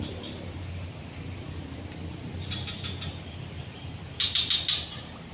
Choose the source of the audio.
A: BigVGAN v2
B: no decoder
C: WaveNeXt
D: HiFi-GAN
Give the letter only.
B